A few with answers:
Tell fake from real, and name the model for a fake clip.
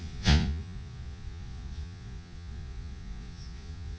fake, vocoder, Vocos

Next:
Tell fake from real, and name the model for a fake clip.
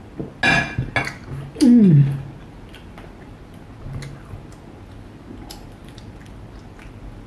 real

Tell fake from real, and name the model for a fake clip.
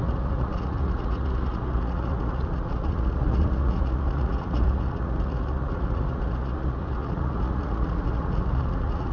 fake, vocoder, Vocos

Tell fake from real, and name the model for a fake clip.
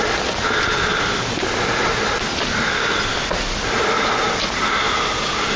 real